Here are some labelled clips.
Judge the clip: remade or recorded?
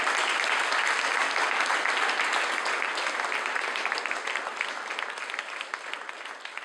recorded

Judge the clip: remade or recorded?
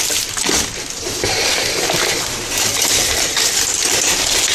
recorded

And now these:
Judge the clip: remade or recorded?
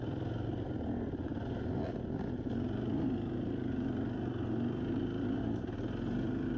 recorded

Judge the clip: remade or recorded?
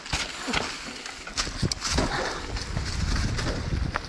recorded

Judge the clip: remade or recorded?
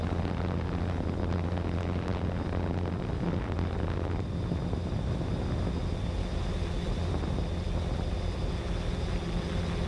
recorded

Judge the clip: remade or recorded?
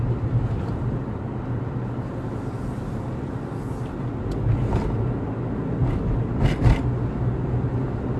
recorded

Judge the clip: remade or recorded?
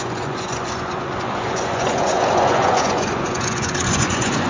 remade